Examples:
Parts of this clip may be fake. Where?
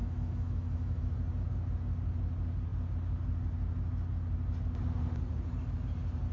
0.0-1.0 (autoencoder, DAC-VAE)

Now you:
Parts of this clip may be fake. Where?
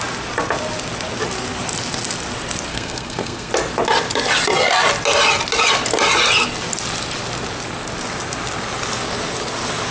2.7-3.5 (codec, SNAC)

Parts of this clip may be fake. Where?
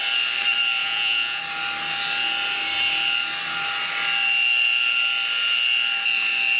0.8-1.4 (vocoder, Vocos)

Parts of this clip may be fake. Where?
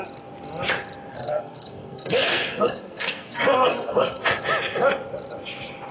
1.1-4.4 (codec, SNAC)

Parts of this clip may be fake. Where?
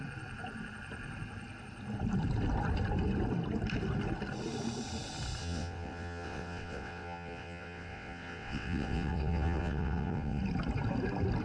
5.4-10.4 (vocoder, WaveNeXt)